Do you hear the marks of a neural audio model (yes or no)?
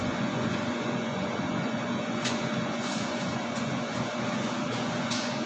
yes